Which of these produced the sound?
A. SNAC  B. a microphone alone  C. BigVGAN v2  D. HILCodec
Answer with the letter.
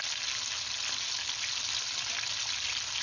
B